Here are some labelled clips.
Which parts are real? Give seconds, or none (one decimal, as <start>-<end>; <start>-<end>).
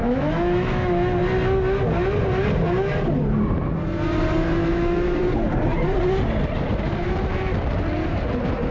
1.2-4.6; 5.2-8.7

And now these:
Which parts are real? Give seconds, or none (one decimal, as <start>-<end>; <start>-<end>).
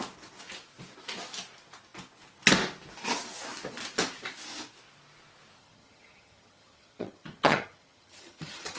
0.0-5.6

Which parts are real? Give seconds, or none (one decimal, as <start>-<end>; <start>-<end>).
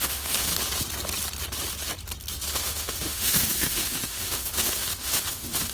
0.5-2.5